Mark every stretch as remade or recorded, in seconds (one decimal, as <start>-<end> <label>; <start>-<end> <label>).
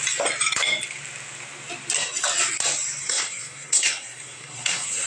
0.0-3.0 recorded; 3.0-5.1 remade